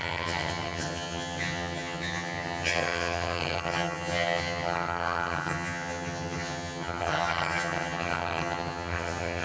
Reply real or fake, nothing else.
fake